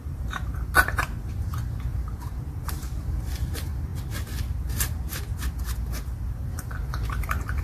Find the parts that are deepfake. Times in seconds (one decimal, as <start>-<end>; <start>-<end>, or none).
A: 0.0-3.9; 6.9-7.6